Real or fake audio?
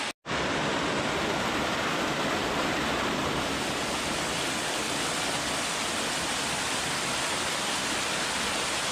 real